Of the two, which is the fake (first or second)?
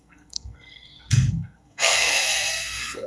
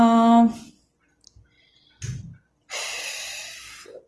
first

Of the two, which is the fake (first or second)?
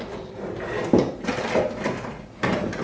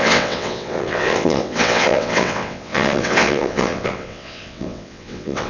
second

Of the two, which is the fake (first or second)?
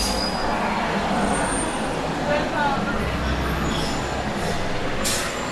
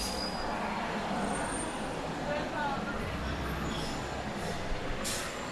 second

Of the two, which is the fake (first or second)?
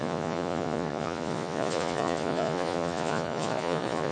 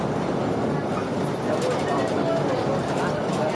first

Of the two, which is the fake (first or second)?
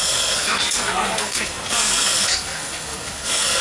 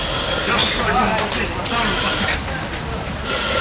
first